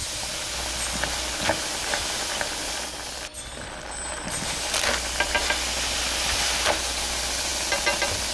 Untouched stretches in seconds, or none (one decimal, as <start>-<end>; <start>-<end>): 0.0-8.3